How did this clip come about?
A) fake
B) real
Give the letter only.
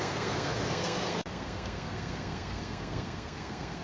A